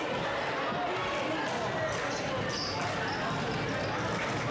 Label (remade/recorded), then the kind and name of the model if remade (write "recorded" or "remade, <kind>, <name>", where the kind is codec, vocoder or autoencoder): recorded